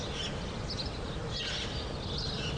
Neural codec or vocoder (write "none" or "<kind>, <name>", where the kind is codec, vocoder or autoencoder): none